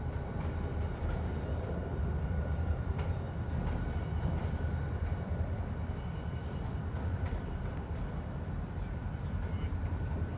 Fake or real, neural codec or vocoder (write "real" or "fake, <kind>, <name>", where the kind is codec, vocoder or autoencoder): fake, vocoder, BigVGAN v2